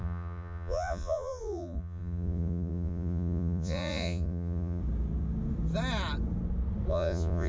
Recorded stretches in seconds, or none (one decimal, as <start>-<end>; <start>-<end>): 4.8-6.9